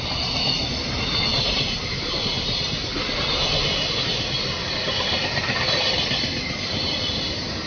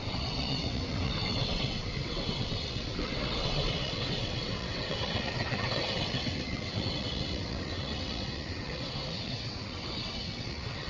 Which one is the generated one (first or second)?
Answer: second